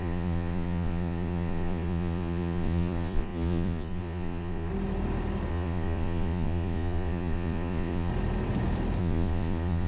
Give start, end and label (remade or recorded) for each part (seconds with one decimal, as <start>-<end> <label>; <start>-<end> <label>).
0.0-4.7 remade; 4.7-5.5 recorded; 5.5-8.1 remade; 8.1-9.0 recorded; 9.0-9.9 remade